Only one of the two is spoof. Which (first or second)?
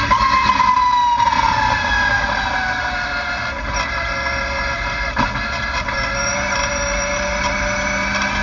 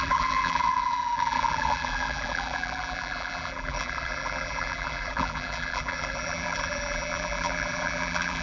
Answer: second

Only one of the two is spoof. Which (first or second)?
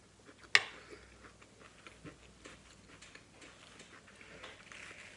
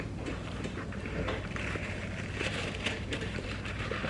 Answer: second